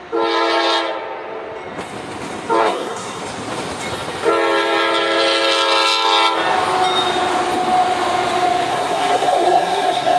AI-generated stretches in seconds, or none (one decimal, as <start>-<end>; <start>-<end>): 2.6-3.2; 8.7-10.2